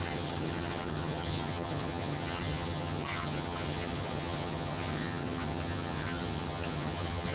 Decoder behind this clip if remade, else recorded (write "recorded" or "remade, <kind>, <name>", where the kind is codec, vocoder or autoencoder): remade, vocoder, HiFi-GAN